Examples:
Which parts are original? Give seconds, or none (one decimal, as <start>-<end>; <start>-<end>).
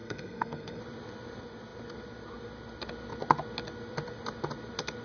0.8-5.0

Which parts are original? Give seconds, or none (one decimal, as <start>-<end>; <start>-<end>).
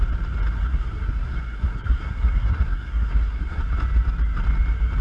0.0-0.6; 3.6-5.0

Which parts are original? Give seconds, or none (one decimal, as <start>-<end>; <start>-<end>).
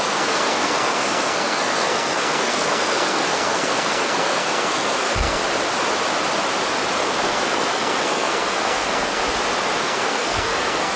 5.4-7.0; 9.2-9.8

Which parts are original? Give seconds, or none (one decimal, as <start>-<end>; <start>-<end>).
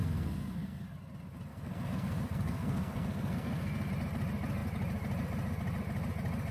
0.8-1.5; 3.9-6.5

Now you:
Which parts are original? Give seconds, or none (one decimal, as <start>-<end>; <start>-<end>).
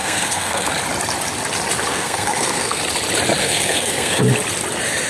0.7-1.9; 2.8-3.4; 4.2-5.1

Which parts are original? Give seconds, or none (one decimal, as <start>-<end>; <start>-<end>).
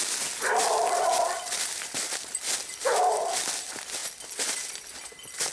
0.0-5.5